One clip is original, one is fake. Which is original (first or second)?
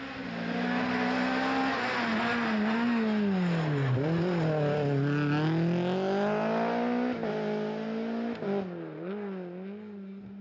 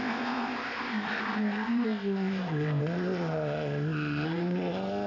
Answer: first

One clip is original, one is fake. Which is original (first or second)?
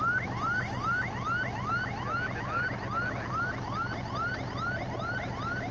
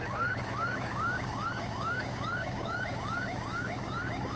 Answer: first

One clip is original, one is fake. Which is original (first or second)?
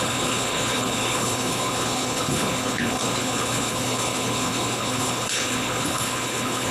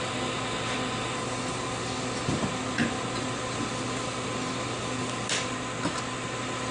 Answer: second